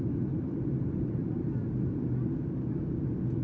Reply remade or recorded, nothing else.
recorded